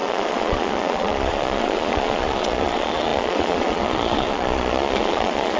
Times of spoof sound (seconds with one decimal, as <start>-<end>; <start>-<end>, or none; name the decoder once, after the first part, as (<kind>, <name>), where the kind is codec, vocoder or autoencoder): 0.0-5.6 (vocoder, Vocos)